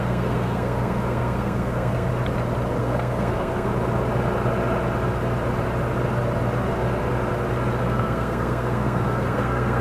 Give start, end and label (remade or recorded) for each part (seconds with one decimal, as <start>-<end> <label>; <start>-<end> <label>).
0.0-2.1 remade; 2.1-2.8 recorded; 2.8-3.7 remade; 3.7-7.8 recorded; 7.8-9.8 remade